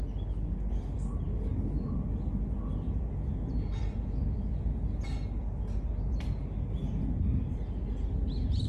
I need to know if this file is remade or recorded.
recorded